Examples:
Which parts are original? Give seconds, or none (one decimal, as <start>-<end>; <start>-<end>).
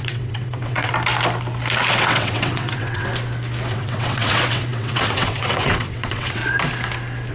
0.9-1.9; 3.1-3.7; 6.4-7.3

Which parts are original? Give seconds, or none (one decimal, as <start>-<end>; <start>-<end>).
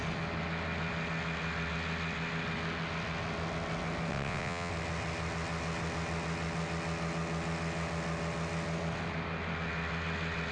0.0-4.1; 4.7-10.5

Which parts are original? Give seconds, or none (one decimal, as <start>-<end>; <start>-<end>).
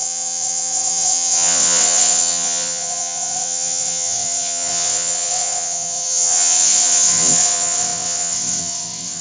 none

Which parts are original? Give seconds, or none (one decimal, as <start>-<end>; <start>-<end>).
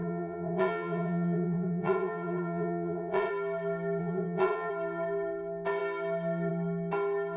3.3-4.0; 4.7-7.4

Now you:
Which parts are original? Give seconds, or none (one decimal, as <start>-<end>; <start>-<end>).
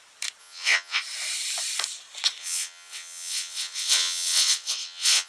0.0-0.4; 1.0-2.4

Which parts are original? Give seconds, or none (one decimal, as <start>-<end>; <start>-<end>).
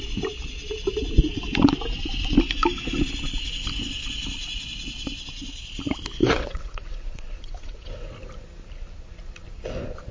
0.0-6.2; 8.1-10.1